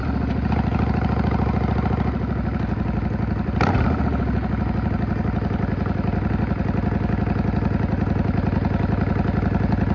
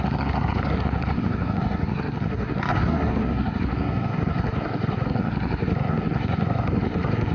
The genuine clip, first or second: first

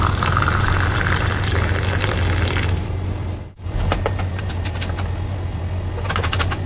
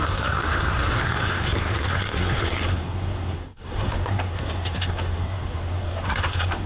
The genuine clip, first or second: first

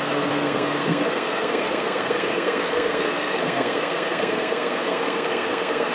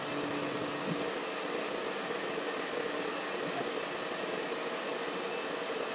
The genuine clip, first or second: second